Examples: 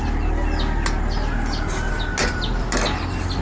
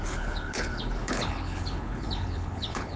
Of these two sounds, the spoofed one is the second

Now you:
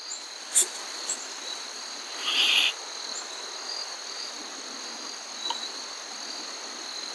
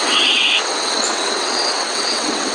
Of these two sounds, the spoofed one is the second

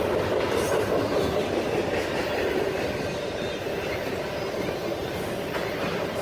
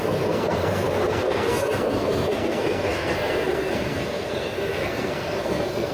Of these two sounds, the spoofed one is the second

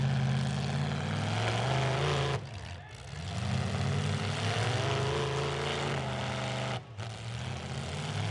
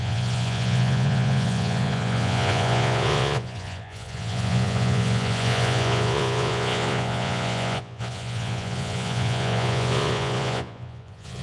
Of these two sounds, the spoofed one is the second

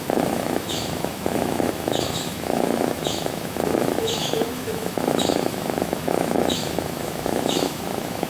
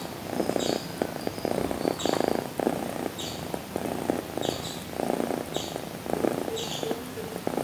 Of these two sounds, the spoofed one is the first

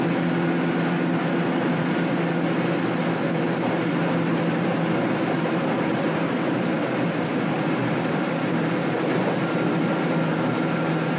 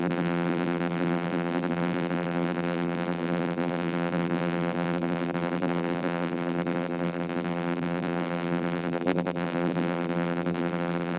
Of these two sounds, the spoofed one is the second